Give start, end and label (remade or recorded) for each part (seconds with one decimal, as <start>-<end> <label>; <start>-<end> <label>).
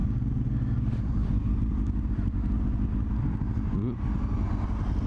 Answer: 0.0-5.1 recorded